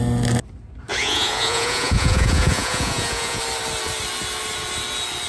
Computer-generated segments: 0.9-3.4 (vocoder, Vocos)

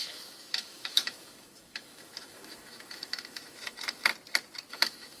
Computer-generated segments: 0.0-4.1 (autoencoder, DAC-VAE); 4.7-5.2

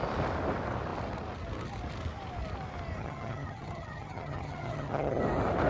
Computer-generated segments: 3.0-5.2 (vocoder, HiFi-GAN)

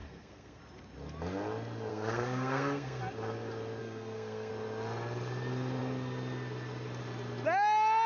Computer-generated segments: 0.0-0.6 (codec, SNAC); 1.9-3.0; 3.8-4.5

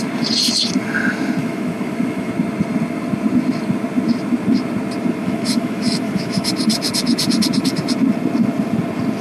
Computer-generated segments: 1.4-2.3 (autoencoder, DAC-VAE); 5.2-6.5

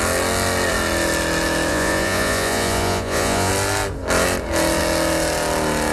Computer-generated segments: 1.7-3.5 (vocoder, Vocos)

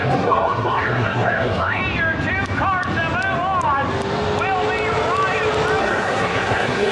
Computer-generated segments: 0.0-1.8 (codec, SNAC); 5.8-6.9

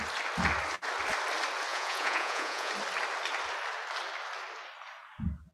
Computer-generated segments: 1.7-2.7 (vocoder, Vocos)